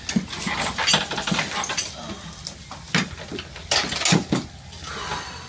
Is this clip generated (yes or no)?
no